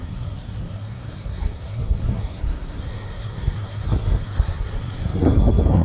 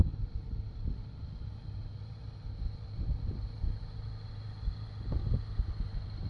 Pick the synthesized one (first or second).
first